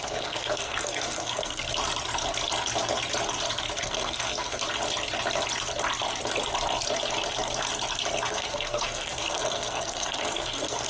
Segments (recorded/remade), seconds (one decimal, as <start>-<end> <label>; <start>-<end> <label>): 0.0-1.7 remade; 1.7-3.8 recorded; 3.8-4.6 remade; 4.6-8.3 recorded; 8.3-10.9 remade